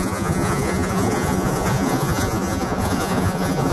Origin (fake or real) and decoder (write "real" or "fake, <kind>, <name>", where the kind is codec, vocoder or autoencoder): fake, vocoder, Vocos